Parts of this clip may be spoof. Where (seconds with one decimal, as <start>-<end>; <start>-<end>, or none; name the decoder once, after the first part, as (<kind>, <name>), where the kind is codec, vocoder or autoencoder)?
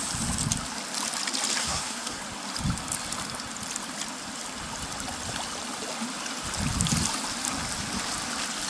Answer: 1.6-2.2 (codec, SNAC)